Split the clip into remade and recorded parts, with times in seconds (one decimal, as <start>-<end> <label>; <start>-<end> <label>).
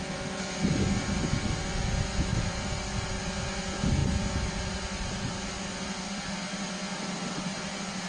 0.0-2.3 recorded; 2.3-3.1 remade; 3.1-8.1 recorded